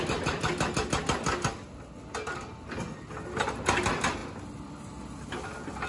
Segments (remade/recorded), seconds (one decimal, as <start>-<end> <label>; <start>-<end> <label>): 0.0-5.9 recorded